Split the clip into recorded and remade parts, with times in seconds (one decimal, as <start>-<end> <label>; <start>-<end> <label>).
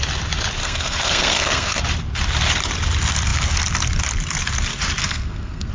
0.0-0.6 recorded; 0.6-1.8 remade; 1.8-5.0 recorded; 5.0-5.7 remade